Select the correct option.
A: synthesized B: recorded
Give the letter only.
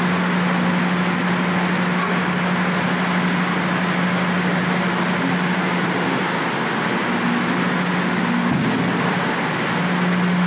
B